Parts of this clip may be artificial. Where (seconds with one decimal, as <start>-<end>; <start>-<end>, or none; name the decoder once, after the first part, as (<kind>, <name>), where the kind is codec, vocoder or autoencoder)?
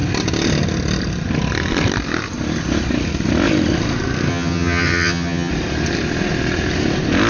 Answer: 4.3-5.5 (vocoder, HiFi-GAN)